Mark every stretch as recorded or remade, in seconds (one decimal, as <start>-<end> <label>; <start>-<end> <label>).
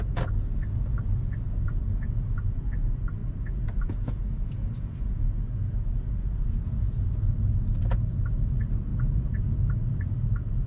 0.0-10.7 remade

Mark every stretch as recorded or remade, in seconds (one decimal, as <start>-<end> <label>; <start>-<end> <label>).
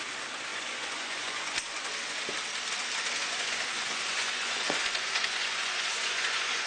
0.0-0.5 recorded; 0.5-1.9 remade; 1.9-3.2 recorded; 3.2-6.7 remade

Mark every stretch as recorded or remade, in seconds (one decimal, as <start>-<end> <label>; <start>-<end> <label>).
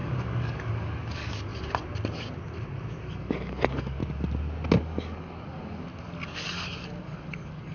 0.0-1.5 remade; 1.5-3.1 recorded; 3.1-4.0 remade; 4.0-4.8 recorded; 4.8-5.9 remade; 5.9-6.8 recorded; 6.8-7.7 remade